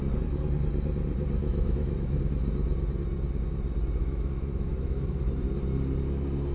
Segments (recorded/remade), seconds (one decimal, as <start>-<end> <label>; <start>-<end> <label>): 0.0-1.4 recorded; 1.4-2.2 remade; 2.2-4.0 recorded; 4.0-5.3 remade; 5.3-6.5 recorded